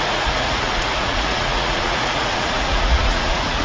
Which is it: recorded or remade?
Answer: remade